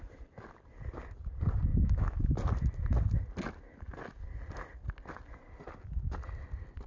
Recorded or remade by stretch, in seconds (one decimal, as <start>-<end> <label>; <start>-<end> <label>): 0.0-1.7 recorded; 1.7-2.3 remade; 2.3-6.9 recorded